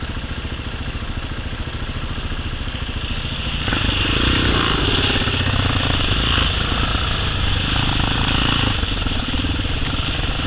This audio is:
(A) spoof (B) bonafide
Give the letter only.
B